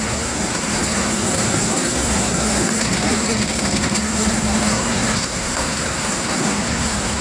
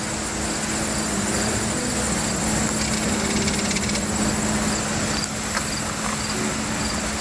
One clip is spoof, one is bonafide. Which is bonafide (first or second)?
second